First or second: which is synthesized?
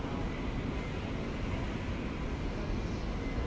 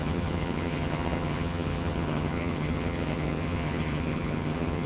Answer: second